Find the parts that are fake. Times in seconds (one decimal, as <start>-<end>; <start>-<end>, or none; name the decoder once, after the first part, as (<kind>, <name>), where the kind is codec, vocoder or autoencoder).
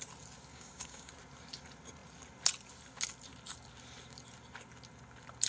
0.5-1.1 (codec, DAC)